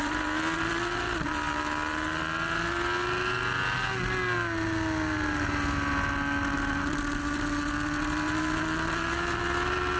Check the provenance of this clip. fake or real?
real